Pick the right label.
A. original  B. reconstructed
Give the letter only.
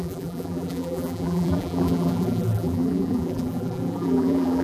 B